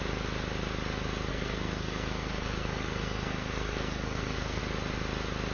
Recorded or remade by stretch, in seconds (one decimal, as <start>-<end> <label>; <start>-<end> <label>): 0.0-1.3 recorded; 1.3-4.6 remade; 4.6-5.5 recorded